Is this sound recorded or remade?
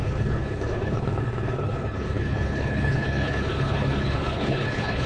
remade